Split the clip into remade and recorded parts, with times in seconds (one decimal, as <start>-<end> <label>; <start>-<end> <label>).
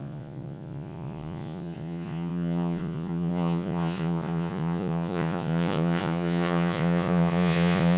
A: 0.0-8.0 remade